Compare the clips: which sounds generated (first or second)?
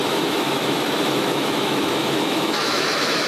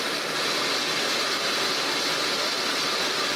first